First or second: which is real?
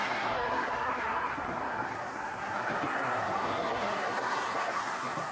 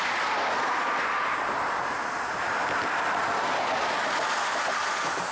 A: second